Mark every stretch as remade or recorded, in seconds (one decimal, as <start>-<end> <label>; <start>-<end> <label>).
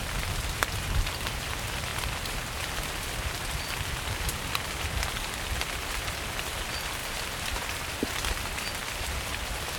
0.0-7.0 recorded; 7.0-8.0 remade; 8.0-8.8 recorded; 8.8-9.3 remade; 9.3-9.8 recorded